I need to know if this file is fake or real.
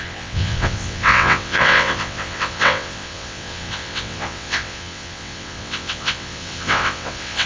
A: fake